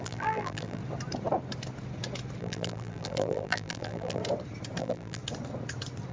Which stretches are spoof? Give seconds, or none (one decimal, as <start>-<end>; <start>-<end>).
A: 0.0-0.8; 2.4-4.2; 4.8-5.2